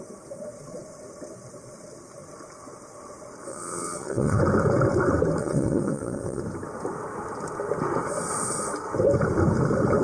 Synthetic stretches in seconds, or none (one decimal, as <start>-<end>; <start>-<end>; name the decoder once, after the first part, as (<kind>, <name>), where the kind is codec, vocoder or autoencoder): 3.5-4.4 (vocoder, WaveNeXt); 5.4-6.4